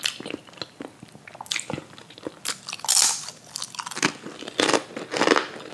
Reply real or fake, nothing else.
real